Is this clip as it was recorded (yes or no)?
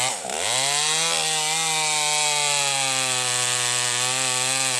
yes